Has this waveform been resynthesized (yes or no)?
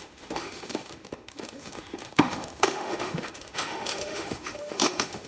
yes